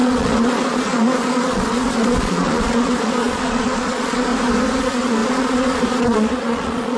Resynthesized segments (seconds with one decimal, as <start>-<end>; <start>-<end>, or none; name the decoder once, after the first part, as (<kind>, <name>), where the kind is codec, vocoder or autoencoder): 0.0-4.3 (vocoder, Vocos); 4.8-7.0